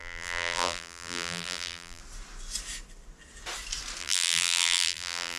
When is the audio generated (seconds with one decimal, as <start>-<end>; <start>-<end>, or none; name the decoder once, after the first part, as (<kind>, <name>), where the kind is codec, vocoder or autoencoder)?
0.0-2.0 (vocoder, BigVGAN v2); 4.0-5.4